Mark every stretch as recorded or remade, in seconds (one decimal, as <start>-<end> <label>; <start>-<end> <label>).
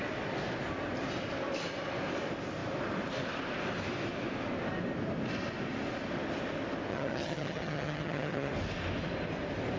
0.0-6.9 recorded; 6.9-8.5 remade; 8.5-9.8 recorded